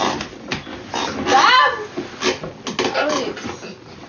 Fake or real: real